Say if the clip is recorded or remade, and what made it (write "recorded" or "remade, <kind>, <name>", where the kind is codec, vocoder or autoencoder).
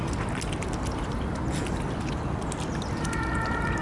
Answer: recorded